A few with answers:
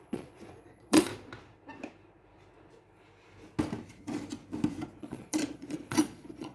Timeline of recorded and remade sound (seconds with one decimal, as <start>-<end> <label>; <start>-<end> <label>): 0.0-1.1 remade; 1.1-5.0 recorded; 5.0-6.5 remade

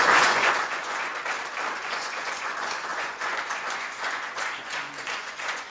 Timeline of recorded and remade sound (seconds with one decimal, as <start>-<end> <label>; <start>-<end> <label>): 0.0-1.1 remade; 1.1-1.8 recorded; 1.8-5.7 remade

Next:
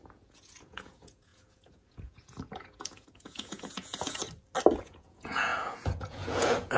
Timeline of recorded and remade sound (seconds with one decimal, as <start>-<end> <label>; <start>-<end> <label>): 0.0-4.2 remade; 4.2-4.8 recorded; 4.8-6.8 remade

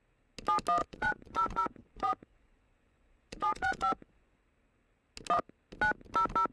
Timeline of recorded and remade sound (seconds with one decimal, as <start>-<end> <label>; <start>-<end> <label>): 0.0-0.8 recorded; 0.8-4.4 remade; 4.4-6.5 recorded

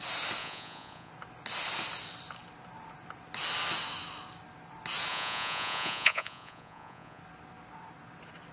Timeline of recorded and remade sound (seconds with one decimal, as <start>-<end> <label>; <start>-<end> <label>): 0.0-0.4 recorded; 0.4-1.1 remade; 1.1-5.1 recorded; 5.1-7.2 remade; 7.2-8.5 recorded

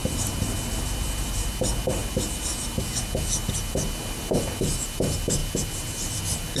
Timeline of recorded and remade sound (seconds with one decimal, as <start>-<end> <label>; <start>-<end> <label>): 0.0-6.6 recorded

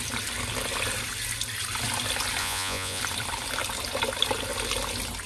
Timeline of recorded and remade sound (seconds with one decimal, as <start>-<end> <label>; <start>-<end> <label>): 0.0-2.4 recorded; 2.4-3.0 remade; 3.0-5.3 recorded